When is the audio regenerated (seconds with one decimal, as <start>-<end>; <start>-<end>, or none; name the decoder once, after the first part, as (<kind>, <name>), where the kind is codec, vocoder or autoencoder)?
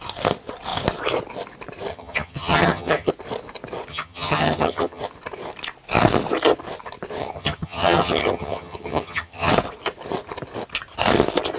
1.9-3.1 (vocoder, HiFi-GAN); 3.9-5.0; 7.2-9.5